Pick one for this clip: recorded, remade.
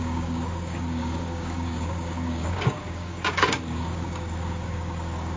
remade